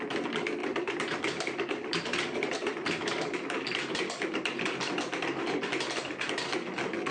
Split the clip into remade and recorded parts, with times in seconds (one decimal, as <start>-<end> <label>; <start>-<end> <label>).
0.0-0.6 recorded; 0.6-4.6 remade; 4.6-7.1 recorded